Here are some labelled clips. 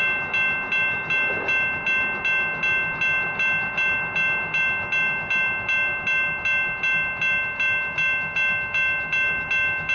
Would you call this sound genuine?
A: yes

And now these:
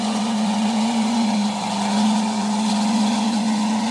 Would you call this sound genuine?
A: no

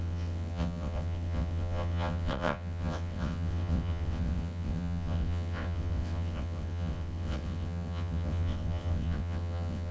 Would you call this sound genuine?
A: no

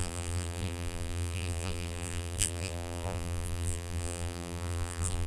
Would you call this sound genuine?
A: no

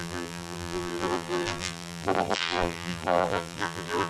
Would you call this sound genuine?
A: no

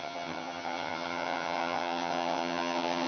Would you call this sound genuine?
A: no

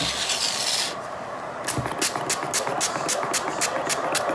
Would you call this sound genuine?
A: yes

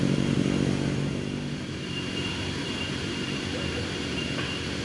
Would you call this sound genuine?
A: no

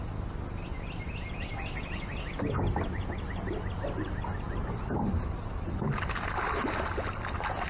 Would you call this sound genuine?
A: yes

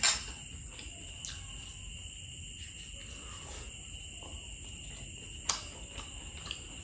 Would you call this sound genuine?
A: yes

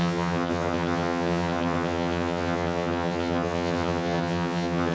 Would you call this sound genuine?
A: no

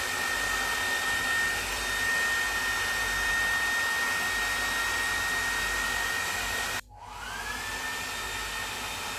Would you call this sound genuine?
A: yes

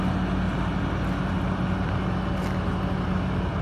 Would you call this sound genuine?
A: yes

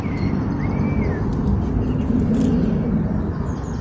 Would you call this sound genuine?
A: yes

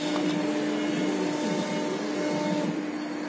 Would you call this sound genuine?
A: yes